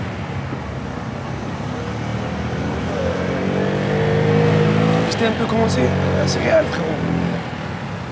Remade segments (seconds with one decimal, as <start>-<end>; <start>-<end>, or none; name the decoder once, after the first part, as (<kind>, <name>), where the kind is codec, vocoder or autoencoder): none